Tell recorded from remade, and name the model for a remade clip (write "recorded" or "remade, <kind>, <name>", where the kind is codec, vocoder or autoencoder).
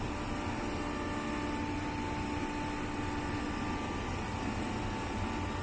recorded